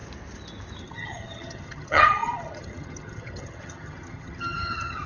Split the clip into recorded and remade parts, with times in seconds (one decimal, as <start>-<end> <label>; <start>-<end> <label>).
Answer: 0.0-0.8 recorded; 0.8-5.1 remade